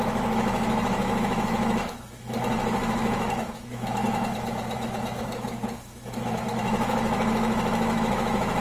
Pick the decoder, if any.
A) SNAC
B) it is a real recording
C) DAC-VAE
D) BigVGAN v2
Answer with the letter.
C